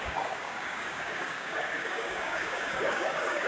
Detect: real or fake fake